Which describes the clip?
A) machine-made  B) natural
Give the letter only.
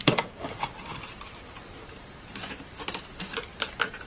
B